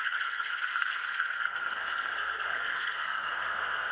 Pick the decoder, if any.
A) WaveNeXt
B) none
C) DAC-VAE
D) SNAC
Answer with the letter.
D